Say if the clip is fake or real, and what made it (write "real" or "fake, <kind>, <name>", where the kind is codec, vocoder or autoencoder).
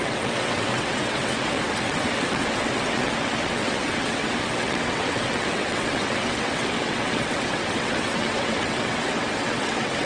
fake, vocoder, WaveNeXt